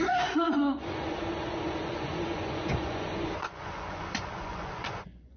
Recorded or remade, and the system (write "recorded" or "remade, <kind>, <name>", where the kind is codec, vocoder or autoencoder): remade, vocoder, Vocos